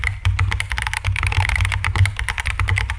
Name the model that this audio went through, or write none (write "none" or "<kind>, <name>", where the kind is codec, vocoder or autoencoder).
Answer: none